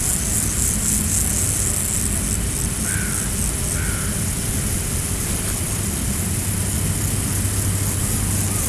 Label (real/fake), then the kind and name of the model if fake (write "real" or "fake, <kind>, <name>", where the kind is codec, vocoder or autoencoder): real